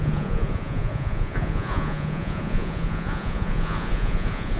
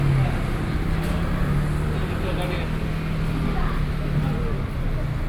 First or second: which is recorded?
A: second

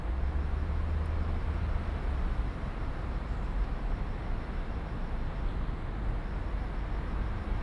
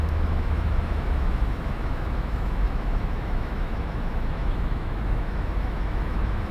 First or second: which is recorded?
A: first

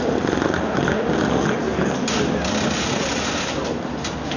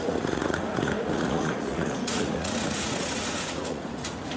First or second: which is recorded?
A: first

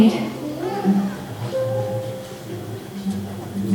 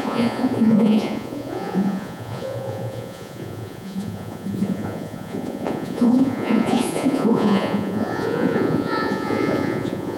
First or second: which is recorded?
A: first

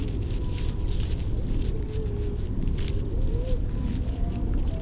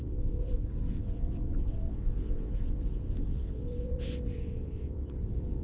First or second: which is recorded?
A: first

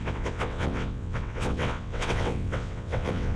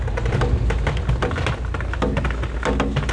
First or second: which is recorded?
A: second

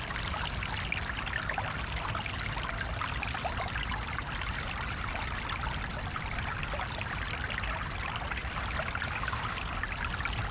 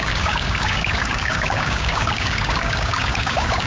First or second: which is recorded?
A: first